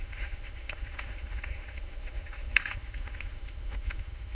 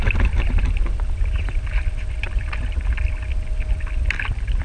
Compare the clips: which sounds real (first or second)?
second